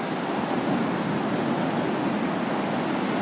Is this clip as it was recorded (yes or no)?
yes